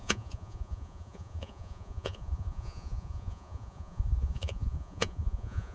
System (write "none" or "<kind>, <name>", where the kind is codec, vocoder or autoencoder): vocoder, Vocos